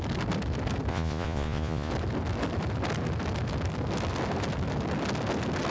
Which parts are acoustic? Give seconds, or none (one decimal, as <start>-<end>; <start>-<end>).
0.0-0.9; 1.9-5.7